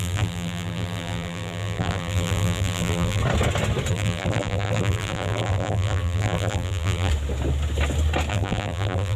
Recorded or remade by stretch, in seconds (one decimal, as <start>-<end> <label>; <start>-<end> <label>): 0.0-3.2 remade; 3.2-3.9 recorded; 3.9-7.1 remade; 7.1-8.3 recorded; 8.3-9.2 remade